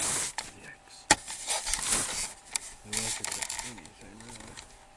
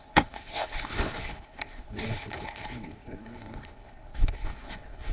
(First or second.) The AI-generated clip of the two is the second